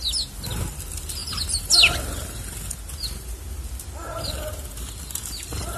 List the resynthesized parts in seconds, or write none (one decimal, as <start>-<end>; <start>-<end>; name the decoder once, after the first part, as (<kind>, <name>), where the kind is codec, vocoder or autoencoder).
none